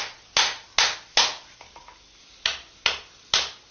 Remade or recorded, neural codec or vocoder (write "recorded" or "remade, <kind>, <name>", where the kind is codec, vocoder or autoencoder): recorded